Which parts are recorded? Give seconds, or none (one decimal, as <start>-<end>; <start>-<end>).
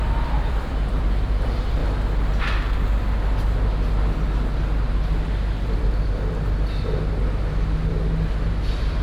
1.8-7.0